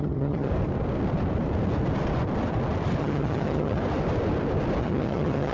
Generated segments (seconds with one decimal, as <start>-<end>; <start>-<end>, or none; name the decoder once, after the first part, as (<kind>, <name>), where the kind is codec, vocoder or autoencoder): 0.0-0.5 (vocoder, HiFi-GAN); 3.0-3.8; 4.8-5.5